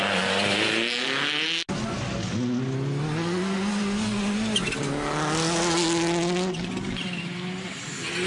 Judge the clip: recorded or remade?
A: recorded